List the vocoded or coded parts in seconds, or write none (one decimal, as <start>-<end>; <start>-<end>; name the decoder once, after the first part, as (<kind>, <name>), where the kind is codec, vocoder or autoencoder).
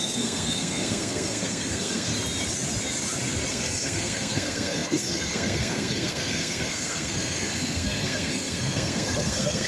0.0-2.1 (codec, SNAC); 3.5-9.7